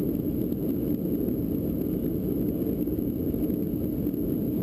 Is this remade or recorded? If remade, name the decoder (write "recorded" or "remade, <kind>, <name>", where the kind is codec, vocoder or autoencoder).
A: recorded